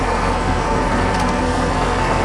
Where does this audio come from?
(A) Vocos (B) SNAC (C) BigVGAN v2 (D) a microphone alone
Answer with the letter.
B